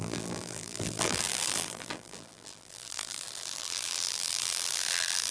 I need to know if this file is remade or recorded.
remade